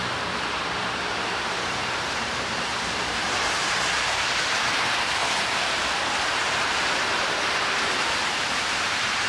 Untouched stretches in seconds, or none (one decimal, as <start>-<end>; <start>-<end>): none